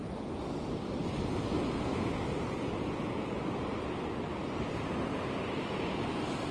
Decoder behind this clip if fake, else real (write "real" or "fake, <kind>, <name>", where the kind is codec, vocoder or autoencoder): real